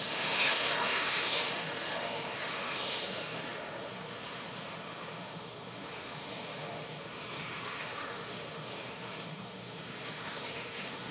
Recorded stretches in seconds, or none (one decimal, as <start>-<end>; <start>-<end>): none